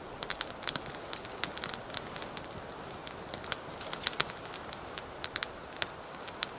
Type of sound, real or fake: real